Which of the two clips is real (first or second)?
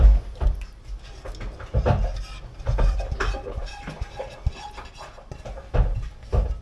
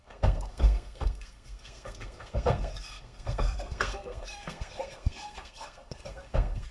first